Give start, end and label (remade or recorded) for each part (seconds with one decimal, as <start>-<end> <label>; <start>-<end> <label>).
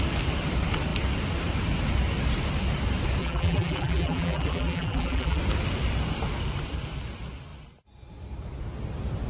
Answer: 0.0-3.2 recorded; 3.2-5.4 remade; 5.4-9.3 recorded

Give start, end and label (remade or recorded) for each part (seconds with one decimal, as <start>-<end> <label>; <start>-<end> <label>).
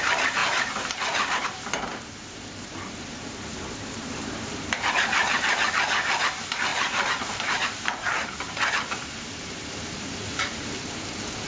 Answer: 0.0-0.4 recorded; 0.4-4.9 remade; 4.9-6.7 recorded; 6.7-11.5 remade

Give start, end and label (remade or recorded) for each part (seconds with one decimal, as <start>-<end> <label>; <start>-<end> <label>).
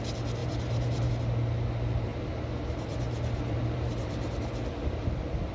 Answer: 0.0-0.4 recorded; 0.4-1.1 remade; 1.1-2.1 recorded; 2.1-4.3 remade; 4.3-5.5 recorded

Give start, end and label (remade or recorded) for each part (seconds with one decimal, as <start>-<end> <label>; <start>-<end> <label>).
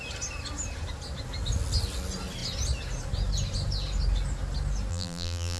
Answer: 0.0-4.9 recorded; 4.9-5.6 remade